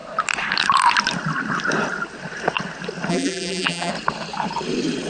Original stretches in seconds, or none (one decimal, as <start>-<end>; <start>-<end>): 0.0-3.1; 3.9-5.1